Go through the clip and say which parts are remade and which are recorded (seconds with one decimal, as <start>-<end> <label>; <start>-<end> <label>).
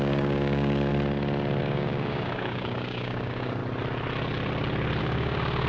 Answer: 0.0-0.9 remade; 0.9-1.6 recorded; 1.6-3.6 remade; 3.6-5.0 recorded; 5.0-5.7 remade